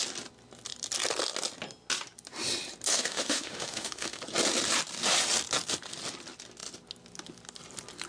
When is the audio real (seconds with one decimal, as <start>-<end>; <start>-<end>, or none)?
0.0-2.9; 4.2-8.1